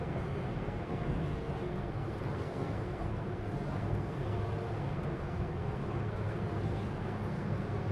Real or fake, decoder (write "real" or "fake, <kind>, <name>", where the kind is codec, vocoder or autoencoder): fake, codec, SNAC